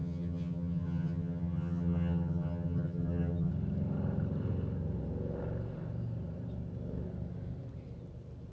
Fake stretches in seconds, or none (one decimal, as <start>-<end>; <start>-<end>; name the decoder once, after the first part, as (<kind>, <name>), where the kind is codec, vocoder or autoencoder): 0.0-3.5 (vocoder, HiFi-GAN)